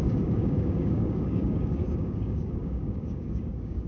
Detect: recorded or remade remade